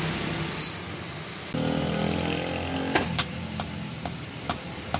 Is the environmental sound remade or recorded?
recorded